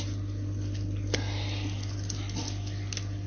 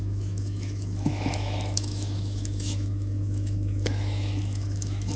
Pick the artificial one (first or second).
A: second